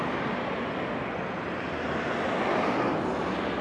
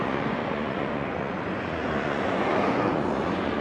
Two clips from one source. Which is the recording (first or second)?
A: first